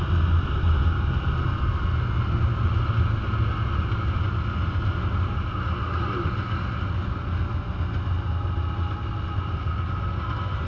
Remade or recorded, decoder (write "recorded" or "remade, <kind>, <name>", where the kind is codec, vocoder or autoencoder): recorded